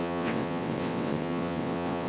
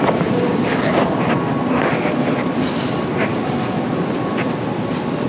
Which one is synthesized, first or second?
first